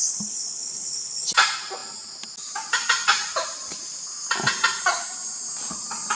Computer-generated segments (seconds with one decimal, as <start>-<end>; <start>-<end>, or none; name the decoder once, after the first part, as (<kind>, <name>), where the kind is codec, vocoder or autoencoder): 0.0-1.3 (codec, HILCodec)